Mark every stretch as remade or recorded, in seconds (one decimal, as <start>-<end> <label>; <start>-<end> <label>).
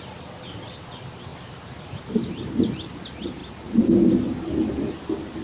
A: 0.0-5.4 recorded